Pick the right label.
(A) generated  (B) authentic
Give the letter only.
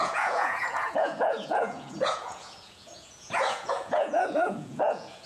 A